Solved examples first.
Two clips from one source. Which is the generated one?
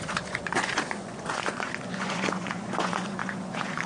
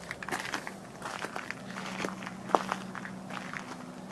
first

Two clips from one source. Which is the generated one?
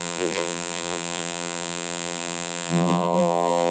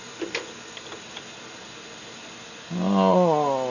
first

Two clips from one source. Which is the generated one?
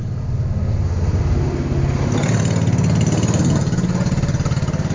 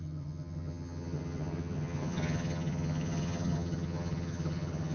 second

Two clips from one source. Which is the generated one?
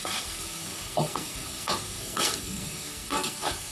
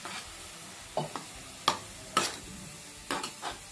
first